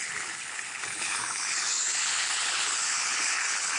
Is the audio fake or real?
fake